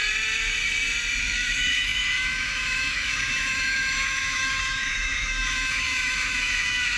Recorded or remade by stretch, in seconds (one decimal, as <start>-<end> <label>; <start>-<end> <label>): 0.0-1.2 recorded; 1.2-7.0 remade